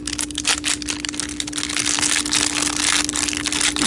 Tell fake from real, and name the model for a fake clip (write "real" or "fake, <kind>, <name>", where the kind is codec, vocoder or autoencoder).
real